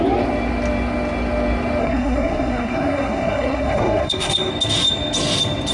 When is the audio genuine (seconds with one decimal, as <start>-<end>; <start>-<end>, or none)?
0.0-1.8; 4.5-5.7